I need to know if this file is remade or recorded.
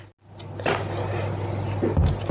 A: recorded